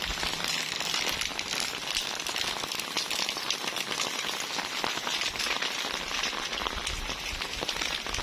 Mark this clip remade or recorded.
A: recorded